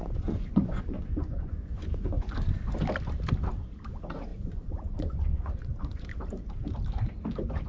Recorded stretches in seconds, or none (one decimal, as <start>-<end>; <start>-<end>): 2.8-4.3; 6.0-7.7